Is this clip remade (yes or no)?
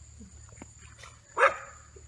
no